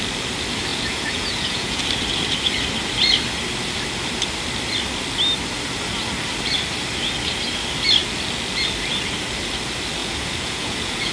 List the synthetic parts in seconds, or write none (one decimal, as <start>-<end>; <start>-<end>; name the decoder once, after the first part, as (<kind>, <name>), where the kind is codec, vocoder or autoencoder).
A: 0.7-1.8 (vocoder, Vocos); 10.0-11.1